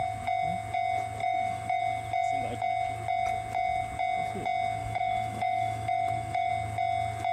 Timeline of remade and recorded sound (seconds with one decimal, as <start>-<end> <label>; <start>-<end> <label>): 0.0-1.2 recorded; 1.2-1.8 remade; 1.8-4.8 recorded; 4.8-6.5 remade; 6.5-7.3 recorded